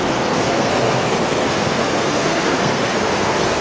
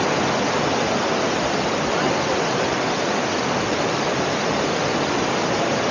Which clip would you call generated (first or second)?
first